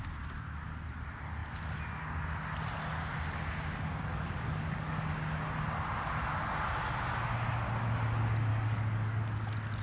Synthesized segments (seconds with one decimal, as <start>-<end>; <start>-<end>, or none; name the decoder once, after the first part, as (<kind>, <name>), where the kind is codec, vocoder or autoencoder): 4.1-5.1 (codec, DAC); 8.5-9.2